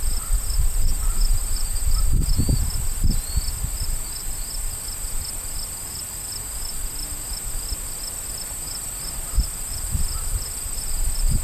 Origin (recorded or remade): recorded